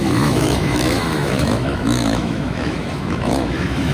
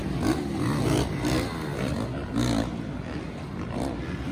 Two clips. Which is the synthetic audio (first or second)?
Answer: first